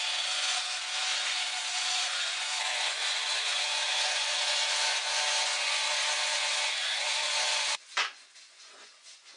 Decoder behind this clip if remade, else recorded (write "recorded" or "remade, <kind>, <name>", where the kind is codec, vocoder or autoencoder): remade, vocoder, Vocos